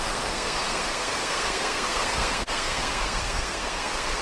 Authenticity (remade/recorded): remade